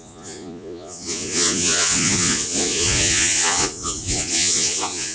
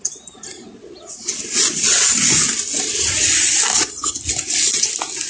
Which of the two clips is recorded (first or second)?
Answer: second